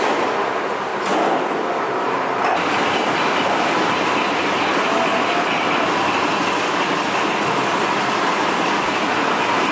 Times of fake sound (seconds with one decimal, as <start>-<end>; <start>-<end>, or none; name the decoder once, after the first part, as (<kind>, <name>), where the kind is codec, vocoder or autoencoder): none